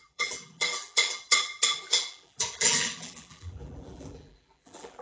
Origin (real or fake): fake